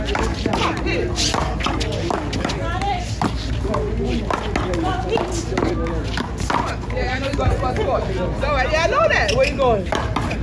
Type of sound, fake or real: real